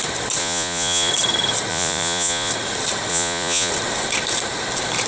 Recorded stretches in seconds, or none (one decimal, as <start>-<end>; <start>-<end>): 0.0-0.4; 1.1-1.7; 2.5-3.1; 3.7-5.1